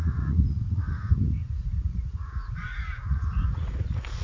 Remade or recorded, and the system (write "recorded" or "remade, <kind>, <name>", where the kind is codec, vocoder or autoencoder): remade, vocoder, Vocos